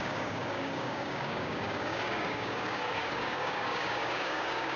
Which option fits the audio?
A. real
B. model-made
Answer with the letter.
B